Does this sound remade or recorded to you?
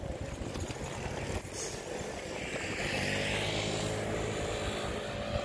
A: recorded